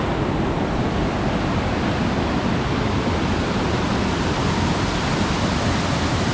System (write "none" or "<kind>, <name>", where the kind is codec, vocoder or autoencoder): none